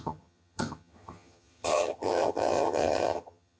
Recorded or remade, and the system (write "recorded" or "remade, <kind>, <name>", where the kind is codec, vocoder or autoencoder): remade, vocoder, HiFi-GAN